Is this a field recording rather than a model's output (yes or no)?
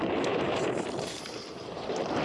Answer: no